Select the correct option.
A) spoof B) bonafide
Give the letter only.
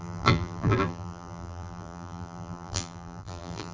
A